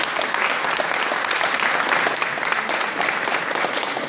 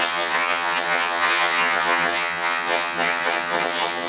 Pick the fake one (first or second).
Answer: second